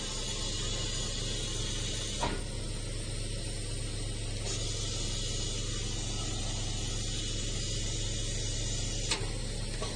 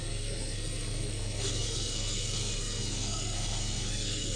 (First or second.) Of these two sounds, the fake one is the second